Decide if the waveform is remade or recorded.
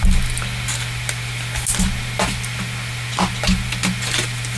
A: recorded